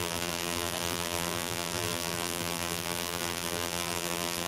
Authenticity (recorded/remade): remade